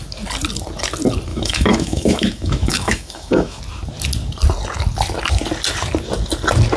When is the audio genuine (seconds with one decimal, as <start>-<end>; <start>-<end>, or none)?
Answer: 0.0-1.3; 3.6-6.8